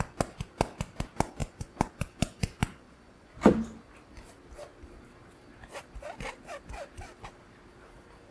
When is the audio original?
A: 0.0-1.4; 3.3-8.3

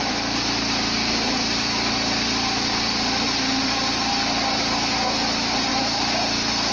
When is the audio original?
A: 0.0-6.7

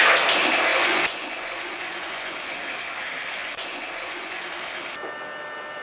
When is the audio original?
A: 0.0-0.7; 2.6-3.4; 4.4-5.8

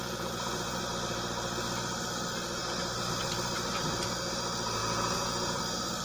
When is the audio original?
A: 0.8-4.8; 5.6-6.0

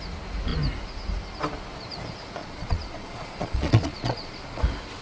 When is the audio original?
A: 0.0-2.4; 4.6-5.0